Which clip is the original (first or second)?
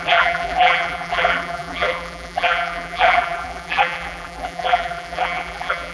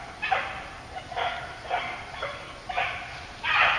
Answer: second